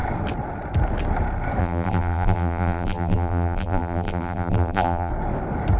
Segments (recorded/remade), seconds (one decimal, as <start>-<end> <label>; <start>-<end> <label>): 0.0-1.6 recorded; 1.6-5.1 remade; 5.1-5.8 recorded